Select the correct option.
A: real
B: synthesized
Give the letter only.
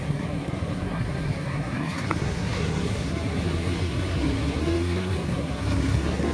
B